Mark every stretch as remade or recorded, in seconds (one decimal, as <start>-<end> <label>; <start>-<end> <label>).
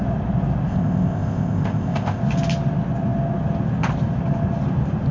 0.0-0.7 recorded; 0.7-2.2 remade; 2.2-5.1 recorded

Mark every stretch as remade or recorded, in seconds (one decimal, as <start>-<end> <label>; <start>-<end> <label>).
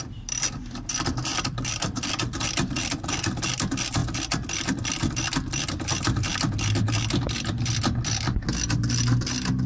0.0-1.3 recorded; 1.3-3.0 remade; 3.0-9.7 recorded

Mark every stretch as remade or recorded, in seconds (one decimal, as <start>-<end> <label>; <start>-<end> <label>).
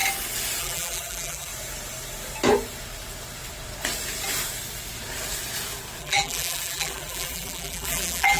0.0-0.6 recorded; 0.6-1.5 remade; 1.5-6.0 recorded; 6.0-8.4 remade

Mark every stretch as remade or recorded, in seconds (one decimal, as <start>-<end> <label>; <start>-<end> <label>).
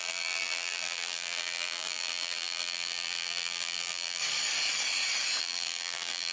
0.0-4.2 remade; 4.2-5.4 recorded; 5.4-6.3 remade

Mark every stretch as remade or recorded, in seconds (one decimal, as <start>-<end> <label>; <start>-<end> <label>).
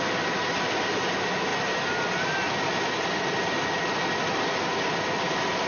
0.0-5.7 recorded